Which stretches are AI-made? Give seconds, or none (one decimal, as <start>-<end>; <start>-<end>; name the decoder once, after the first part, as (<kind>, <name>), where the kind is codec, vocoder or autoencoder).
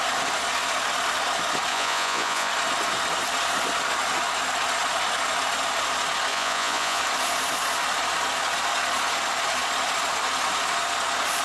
1.7-2.5 (vocoder, Vocos); 6.3-7.0